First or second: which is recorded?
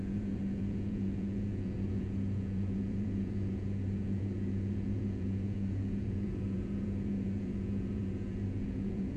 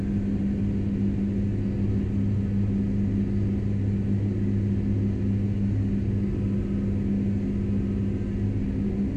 second